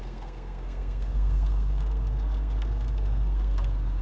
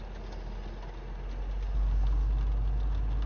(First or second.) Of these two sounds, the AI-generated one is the first